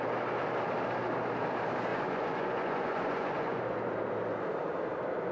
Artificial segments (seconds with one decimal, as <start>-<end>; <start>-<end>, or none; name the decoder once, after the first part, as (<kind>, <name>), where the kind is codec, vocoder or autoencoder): 1.9-3.6 (vocoder, Vocos)